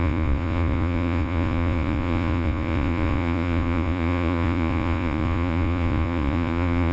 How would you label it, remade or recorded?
remade